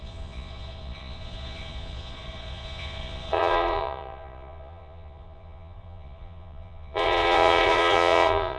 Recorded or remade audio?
remade